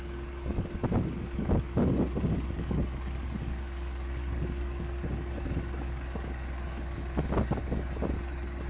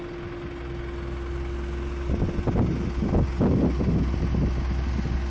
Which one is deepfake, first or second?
first